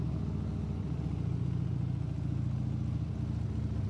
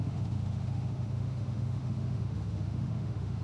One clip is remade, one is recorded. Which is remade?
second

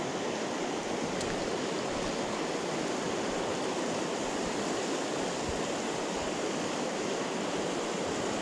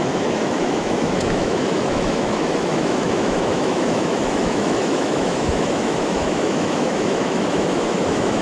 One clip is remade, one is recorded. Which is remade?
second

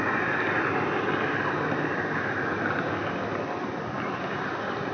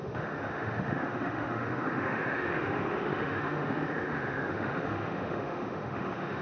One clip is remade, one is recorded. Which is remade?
second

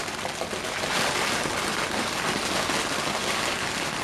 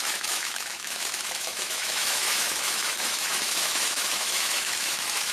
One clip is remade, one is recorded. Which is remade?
second